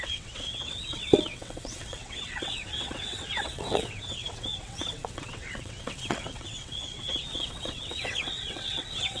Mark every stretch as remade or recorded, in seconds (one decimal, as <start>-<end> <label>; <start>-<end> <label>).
0.0-9.2 remade